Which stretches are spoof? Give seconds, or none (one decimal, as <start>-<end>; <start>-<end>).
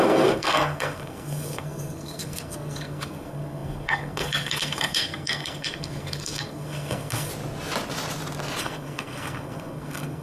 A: 0.0-7.3; 8.6-10.2